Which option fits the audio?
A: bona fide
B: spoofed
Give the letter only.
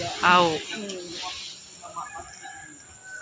A